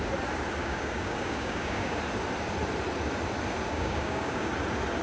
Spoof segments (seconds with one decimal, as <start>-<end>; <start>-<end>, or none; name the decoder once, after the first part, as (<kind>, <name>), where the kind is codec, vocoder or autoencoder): 0.6-2.0 (codec, DAC); 3.7-4.5